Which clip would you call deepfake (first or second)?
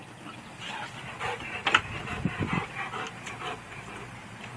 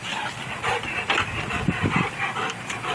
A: second